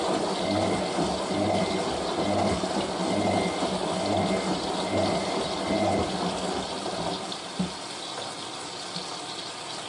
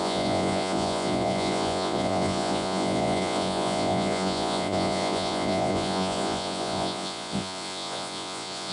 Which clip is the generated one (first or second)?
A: second